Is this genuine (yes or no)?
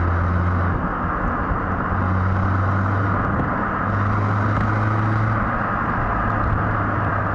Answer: yes